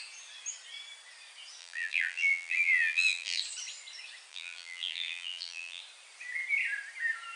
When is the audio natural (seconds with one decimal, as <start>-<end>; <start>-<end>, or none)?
0.0-1.6; 3.4-4.3; 5.8-7.4